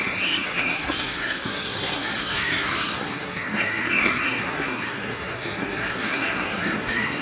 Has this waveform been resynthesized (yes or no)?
yes